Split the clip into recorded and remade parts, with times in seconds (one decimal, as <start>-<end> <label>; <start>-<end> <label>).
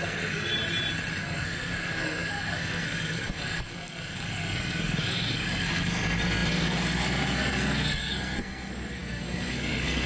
0.0-0.5 remade; 0.5-1.2 recorded; 1.2-10.1 remade